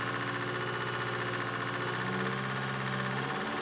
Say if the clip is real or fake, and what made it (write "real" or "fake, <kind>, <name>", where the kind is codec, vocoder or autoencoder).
real